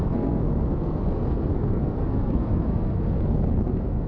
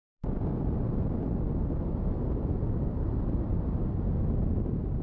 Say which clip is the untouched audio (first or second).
second